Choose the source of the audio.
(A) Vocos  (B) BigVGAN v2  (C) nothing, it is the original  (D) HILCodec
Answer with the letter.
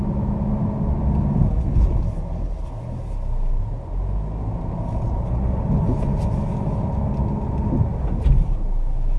C